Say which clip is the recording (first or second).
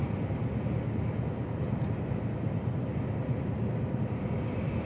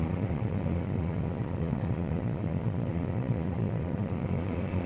first